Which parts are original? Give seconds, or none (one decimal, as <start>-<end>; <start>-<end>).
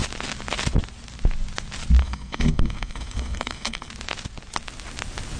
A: 0.0-2.0; 3.9-5.4